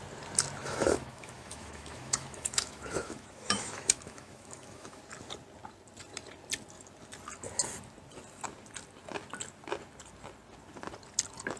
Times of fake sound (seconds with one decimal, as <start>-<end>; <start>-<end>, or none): 0.6-5.0